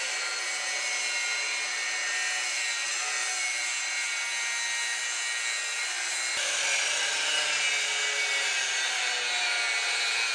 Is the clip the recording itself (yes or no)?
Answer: yes